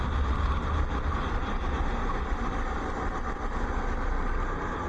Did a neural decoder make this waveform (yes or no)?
no